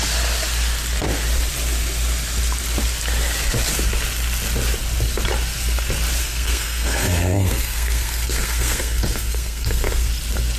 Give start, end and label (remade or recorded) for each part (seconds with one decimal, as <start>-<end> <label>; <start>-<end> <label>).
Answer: 0.0-6.2 recorded; 6.2-10.1 remade; 10.1-10.6 recorded